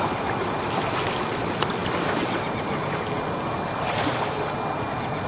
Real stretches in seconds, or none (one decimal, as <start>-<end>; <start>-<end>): 0.0-5.3